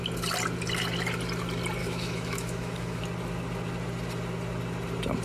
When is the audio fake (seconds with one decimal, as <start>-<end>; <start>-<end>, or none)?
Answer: 1.8-3.0